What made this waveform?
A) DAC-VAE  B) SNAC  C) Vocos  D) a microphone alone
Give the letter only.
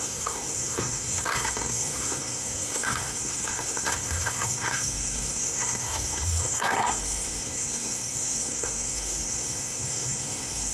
B